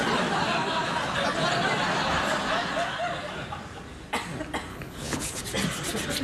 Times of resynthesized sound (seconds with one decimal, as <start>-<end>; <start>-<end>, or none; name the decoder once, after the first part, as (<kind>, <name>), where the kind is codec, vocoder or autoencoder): 4.7-5.4 (codec, HILCodec)